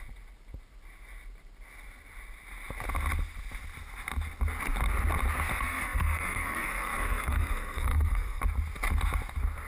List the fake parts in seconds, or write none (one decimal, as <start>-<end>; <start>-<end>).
5.5-8.4